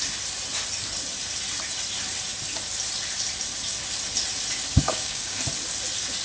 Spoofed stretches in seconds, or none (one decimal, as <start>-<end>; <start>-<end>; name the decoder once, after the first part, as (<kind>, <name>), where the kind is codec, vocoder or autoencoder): 4.7-5.4 (codec, DAC)